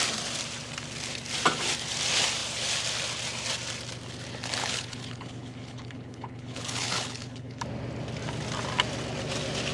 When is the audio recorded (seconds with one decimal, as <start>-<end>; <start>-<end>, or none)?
0.0-4.6; 7.6-9.7